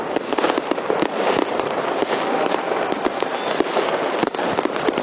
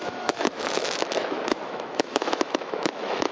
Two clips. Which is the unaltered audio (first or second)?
first